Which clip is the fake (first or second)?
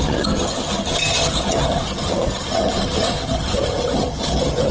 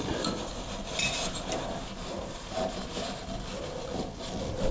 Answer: first